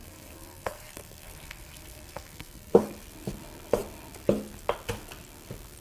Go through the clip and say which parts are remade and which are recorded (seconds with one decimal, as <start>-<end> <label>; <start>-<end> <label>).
0.0-2.8 remade; 2.8-5.8 recorded